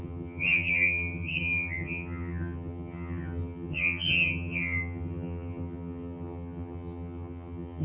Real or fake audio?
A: fake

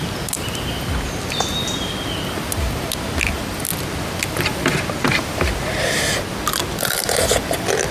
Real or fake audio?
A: real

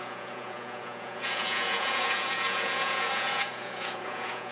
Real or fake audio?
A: fake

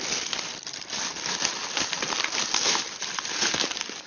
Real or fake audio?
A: real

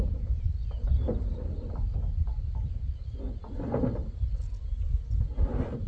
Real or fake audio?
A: real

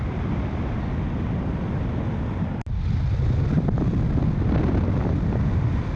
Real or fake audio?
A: real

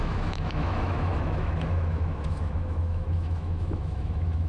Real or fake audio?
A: fake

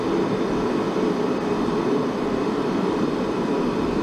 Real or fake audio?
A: real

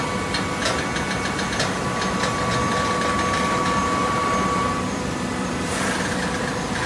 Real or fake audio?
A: real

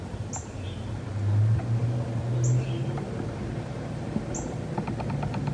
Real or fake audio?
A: real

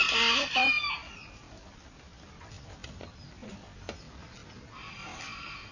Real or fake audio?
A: real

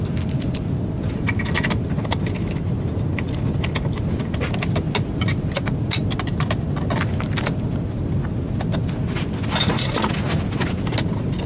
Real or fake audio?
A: real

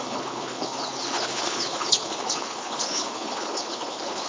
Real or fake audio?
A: fake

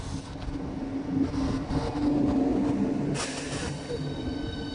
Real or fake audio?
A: real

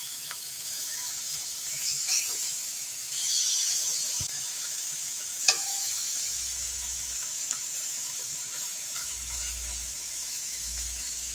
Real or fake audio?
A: fake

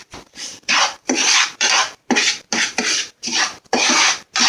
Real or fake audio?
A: fake